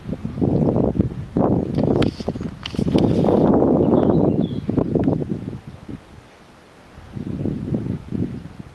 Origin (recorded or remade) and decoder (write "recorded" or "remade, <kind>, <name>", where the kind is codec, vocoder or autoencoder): recorded